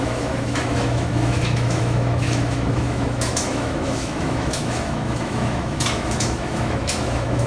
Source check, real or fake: fake